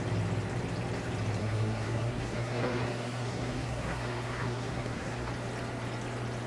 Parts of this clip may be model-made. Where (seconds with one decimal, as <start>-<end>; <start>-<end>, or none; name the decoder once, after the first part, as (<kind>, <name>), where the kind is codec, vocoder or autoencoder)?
1.4-5.3 (codec, SNAC)

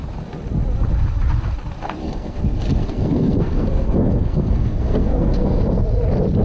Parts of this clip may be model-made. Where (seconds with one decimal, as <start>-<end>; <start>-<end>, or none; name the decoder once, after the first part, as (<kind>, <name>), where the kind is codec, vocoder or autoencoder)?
2.0-5.8 (codec, SNAC)